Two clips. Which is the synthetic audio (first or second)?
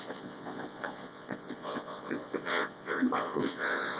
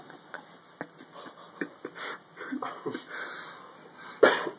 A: first